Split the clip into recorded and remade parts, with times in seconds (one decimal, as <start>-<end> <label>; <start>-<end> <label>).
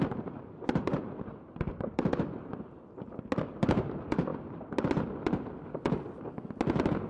0.0-2.5 remade; 2.5-3.5 recorded; 3.5-4.3 remade; 4.3-7.1 recorded